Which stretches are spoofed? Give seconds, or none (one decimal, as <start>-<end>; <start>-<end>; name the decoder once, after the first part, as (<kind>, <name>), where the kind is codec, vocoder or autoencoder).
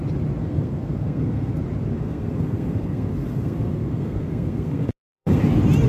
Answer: 0.4-1.5 (codec, SNAC); 1.9-5.4